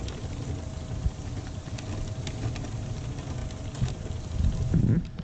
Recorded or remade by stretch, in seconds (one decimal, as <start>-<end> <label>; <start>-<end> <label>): 0.0-5.2 recorded